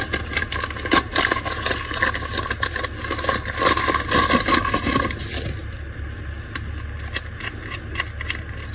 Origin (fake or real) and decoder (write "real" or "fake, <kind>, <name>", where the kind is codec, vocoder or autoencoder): real